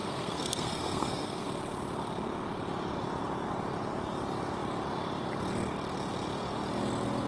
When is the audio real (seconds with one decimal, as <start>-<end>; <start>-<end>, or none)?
1.5-7.3